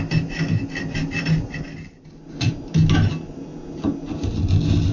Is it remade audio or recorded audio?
recorded